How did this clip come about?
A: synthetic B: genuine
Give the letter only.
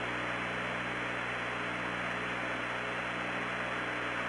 B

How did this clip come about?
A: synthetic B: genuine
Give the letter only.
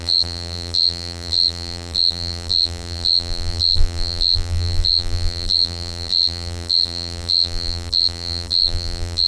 A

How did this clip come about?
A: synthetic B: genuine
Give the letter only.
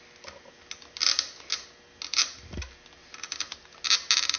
B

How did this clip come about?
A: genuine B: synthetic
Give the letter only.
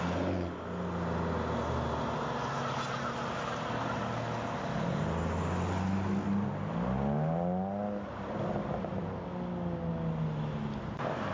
A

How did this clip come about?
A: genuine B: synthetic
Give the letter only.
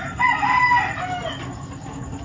A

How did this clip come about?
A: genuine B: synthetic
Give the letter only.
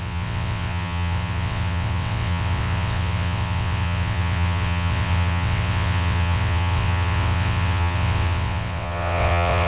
B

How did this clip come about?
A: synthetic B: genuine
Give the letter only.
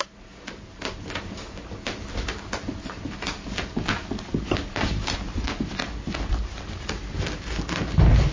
B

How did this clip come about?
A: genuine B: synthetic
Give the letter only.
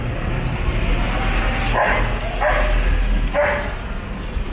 A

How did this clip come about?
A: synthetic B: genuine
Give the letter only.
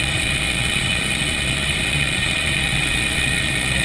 A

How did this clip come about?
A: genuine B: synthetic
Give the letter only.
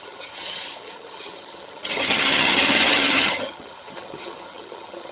B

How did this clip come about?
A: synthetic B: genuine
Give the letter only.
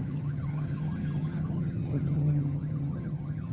A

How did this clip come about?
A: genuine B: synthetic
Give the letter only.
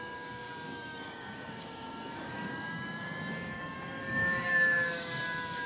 B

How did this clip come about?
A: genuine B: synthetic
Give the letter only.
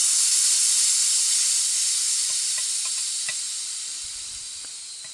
A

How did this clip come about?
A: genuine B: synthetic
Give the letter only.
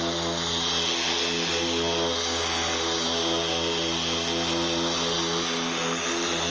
A